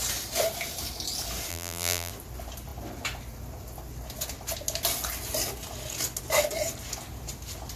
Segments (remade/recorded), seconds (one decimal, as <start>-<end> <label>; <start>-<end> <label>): 0.0-1.5 recorded; 1.5-2.1 remade; 2.1-7.8 recorded